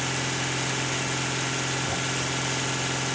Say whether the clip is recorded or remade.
recorded